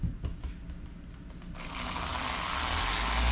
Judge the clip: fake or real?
real